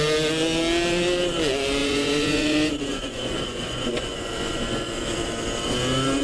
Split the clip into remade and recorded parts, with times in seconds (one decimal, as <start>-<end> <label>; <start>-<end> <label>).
0.0-1.8 recorded; 1.8-4.9 remade; 4.9-6.2 recorded